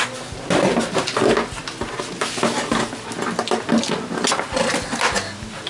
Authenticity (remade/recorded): recorded